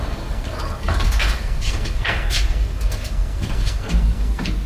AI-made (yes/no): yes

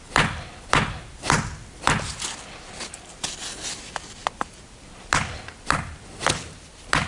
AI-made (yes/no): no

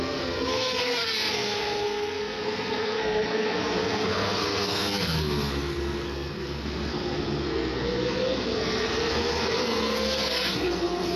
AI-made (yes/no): yes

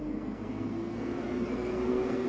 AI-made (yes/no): yes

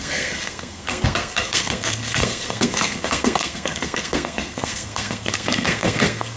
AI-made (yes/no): yes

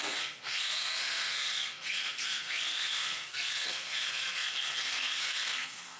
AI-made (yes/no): yes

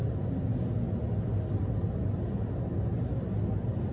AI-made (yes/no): no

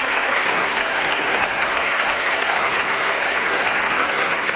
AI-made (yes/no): yes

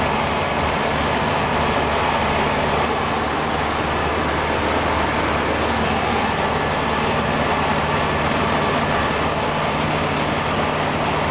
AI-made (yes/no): no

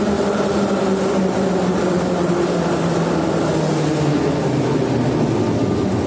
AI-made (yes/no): no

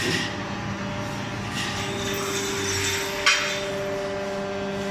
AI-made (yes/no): no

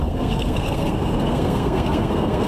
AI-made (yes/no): yes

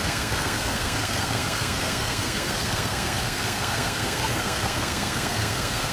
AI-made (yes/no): yes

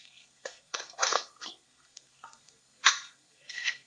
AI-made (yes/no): yes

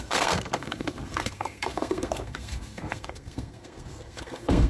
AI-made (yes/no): yes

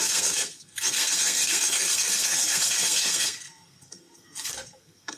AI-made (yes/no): yes